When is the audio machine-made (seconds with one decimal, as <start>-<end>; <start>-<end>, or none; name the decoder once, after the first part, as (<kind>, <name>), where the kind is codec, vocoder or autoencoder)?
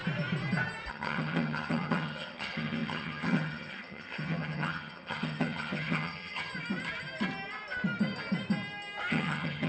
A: 0.9-6.5 (vocoder, HiFi-GAN); 9.1-9.7